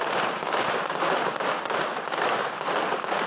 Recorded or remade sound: recorded